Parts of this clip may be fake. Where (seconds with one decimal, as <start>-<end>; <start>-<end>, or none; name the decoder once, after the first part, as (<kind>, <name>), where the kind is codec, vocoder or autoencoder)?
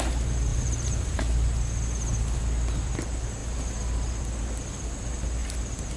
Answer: 0.5-1.2 (vocoder, BigVGAN v2)